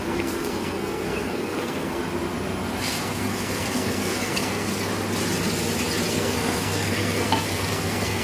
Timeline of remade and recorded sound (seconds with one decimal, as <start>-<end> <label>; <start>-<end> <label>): 0.0-2.0 remade; 2.0-2.8 recorded; 2.8-4.7 remade; 4.7-6.1 recorded; 6.1-8.2 remade